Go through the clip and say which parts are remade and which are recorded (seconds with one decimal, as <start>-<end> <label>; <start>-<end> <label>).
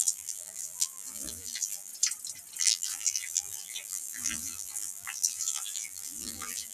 0.0-1.9 remade; 1.9-2.6 recorded; 2.6-6.7 remade